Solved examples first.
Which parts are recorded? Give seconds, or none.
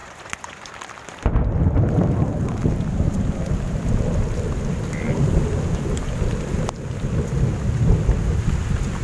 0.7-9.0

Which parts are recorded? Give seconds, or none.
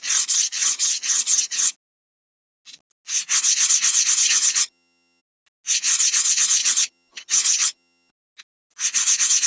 0.0-0.6; 1.7-4.2; 5.2-6.6; 8.1-9.5